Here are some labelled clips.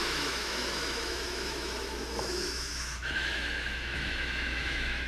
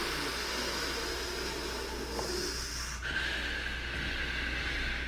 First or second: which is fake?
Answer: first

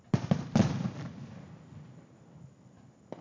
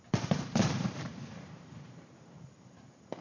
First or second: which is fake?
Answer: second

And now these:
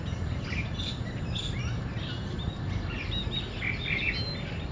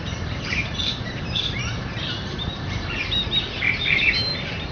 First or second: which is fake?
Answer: second